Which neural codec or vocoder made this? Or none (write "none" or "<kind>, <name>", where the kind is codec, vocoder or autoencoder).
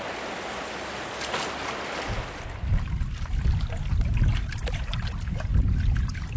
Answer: none